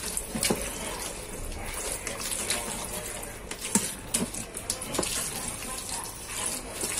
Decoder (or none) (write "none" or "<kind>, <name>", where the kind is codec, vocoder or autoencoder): none